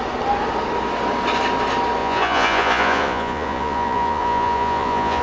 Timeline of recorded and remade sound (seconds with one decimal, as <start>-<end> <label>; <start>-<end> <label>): 0.0-2.0 recorded; 2.0-5.2 remade